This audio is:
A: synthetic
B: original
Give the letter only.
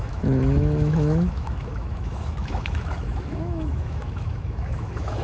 A